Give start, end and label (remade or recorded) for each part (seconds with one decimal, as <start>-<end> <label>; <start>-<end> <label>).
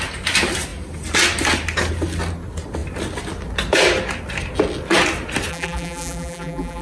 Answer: 0.0-5.5 recorded; 5.5-6.8 remade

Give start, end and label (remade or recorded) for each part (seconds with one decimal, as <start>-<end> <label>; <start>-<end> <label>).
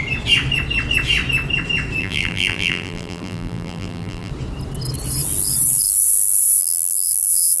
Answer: 0.0-2.0 recorded; 2.0-4.3 remade; 4.3-6.6 recorded; 6.6-7.6 remade